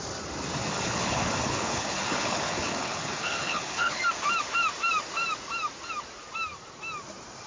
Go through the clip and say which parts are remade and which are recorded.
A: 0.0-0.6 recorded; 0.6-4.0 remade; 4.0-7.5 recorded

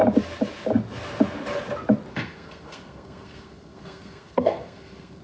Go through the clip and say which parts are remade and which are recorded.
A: 0.0-2.1 recorded; 2.1-5.2 remade

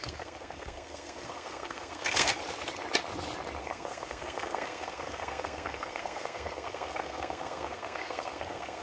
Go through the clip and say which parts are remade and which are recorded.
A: 0.0-2.4 remade; 2.4-3.6 recorded; 3.6-8.8 remade

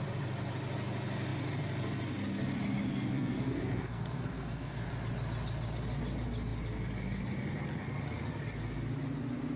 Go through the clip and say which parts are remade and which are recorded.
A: 0.0-2.9 recorded; 2.9-4.9 remade; 4.9-9.6 recorded